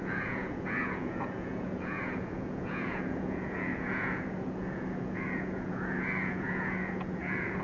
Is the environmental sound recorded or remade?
remade